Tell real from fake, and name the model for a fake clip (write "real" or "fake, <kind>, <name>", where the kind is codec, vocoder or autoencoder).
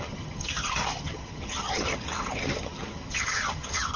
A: fake, vocoder, HiFi-GAN